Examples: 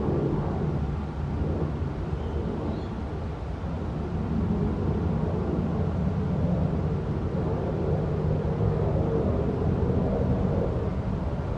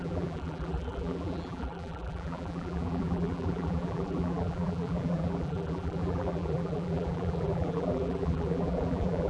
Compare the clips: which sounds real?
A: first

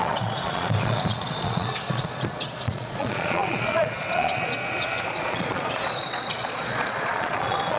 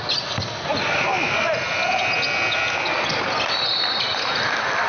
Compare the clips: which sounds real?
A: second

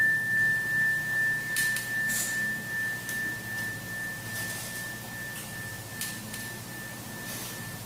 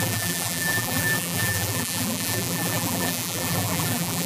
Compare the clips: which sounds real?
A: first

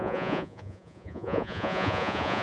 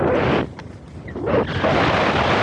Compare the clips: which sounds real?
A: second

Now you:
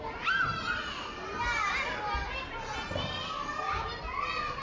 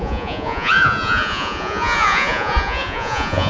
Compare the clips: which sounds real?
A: first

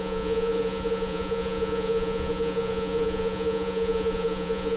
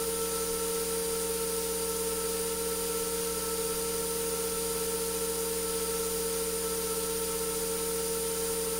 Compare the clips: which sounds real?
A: second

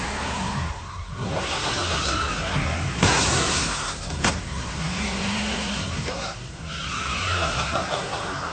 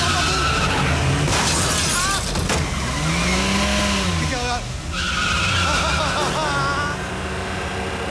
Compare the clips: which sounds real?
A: second